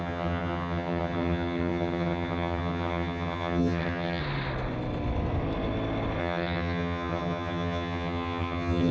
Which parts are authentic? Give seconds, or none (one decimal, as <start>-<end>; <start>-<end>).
4.2-6.2